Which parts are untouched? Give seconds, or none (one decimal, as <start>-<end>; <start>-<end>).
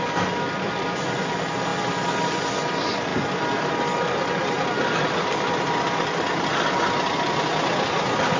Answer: 0.0-8.4